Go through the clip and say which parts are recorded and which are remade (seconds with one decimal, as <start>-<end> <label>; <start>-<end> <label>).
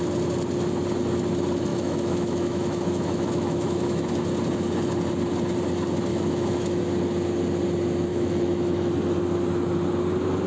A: 0.0-1.7 recorded; 1.7-4.1 remade; 4.1-6.1 recorded; 6.1-6.8 remade; 6.8-8.1 recorded; 8.1-8.9 remade; 8.9-10.5 recorded